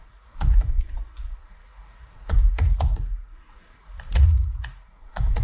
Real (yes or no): no